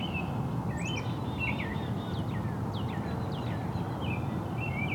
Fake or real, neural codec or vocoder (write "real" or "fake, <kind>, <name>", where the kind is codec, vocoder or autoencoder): real